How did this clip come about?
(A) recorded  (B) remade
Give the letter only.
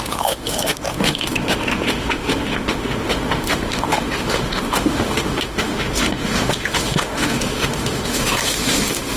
B